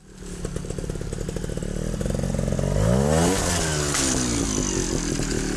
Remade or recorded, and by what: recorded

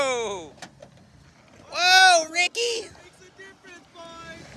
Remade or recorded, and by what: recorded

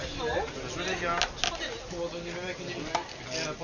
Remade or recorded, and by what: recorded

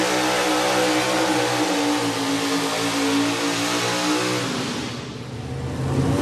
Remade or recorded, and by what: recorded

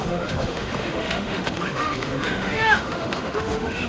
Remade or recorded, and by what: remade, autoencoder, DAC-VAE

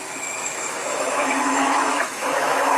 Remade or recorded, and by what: remade, autoencoder, DAC-VAE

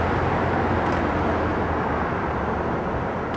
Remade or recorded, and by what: recorded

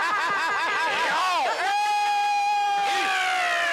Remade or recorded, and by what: recorded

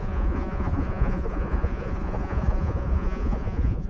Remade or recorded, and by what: remade, vocoder, Vocos